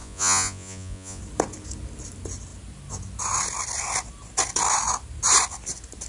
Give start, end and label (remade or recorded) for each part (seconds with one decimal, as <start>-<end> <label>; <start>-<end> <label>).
0.0-1.2 remade; 1.2-6.1 recorded